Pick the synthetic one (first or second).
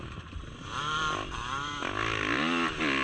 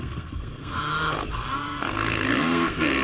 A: second